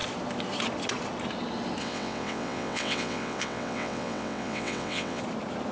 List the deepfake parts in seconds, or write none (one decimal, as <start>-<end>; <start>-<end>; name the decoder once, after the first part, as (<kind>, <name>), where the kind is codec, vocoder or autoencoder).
1.8-5.2 (vocoder, WaveNeXt)